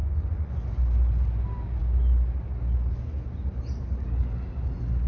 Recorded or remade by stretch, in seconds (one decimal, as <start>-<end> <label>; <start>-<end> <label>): 0.0-0.5 remade; 0.5-5.1 recorded